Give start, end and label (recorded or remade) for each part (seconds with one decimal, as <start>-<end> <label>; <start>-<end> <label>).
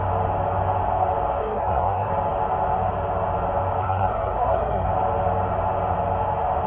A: 0.0-1.4 recorded; 1.4-2.1 remade; 2.1-3.8 recorded; 3.8-4.9 remade; 4.9-6.7 recorded